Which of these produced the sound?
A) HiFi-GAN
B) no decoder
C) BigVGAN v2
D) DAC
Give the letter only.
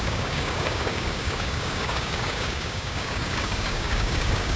D